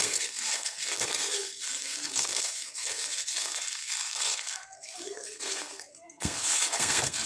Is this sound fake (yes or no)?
yes